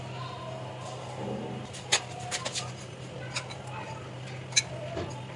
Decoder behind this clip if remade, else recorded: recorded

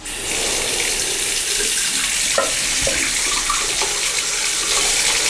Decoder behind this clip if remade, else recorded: recorded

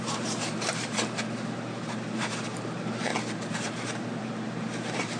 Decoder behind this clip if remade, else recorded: remade, vocoder, BigVGAN v2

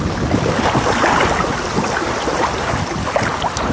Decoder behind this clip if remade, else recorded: recorded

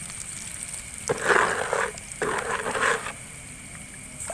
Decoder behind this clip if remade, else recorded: recorded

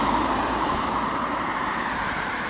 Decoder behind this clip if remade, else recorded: remade, vocoder, BigVGAN v2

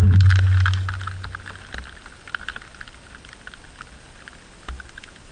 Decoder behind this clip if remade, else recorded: recorded